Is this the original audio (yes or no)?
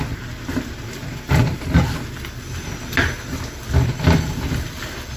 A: no